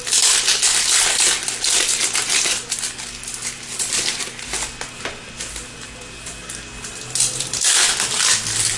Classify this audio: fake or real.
real